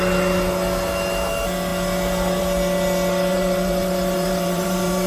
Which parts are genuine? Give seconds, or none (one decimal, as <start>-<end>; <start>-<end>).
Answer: 0.0-3.3